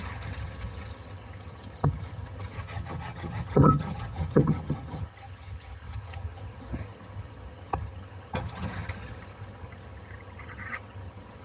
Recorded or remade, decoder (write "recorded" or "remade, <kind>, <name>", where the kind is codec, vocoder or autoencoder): remade, vocoder, HiFi-GAN